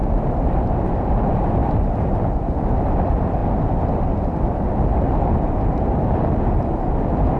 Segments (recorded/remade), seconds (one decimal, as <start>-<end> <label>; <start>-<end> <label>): 0.0-0.6 remade; 0.6-1.6 recorded; 1.6-2.5 remade; 2.5-7.4 recorded